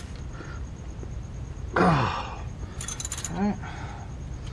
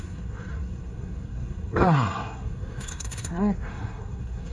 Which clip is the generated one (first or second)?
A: second